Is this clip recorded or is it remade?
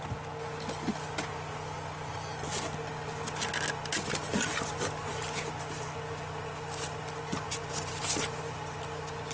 recorded